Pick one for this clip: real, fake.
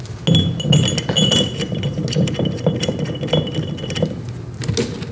real